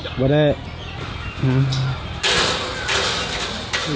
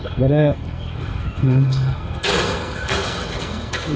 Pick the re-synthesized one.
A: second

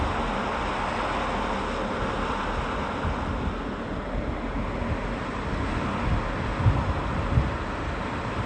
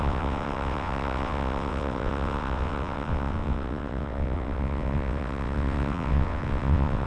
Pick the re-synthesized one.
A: second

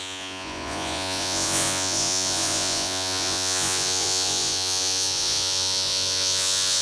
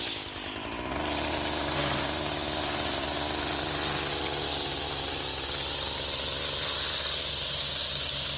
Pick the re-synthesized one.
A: first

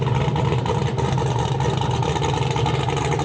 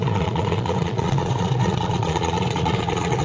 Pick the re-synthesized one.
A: second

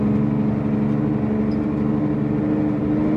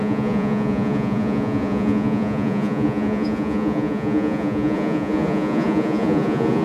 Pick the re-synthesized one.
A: second